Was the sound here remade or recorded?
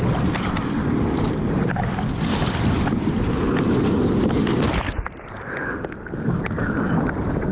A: recorded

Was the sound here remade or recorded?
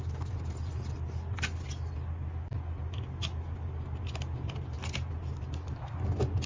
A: recorded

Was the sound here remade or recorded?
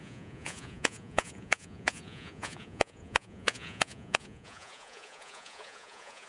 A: remade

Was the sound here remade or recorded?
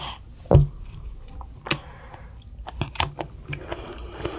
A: recorded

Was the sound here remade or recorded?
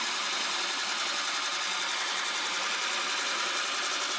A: recorded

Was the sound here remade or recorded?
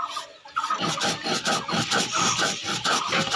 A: recorded